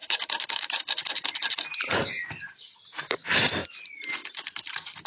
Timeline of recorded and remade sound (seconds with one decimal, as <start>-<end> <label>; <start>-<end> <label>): 0.0-0.8 remade; 0.8-5.1 recorded